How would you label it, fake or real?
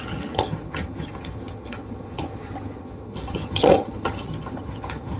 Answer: fake